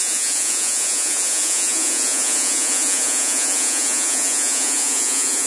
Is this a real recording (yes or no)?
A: no